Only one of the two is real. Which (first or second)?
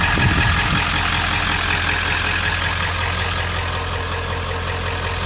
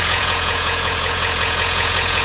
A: first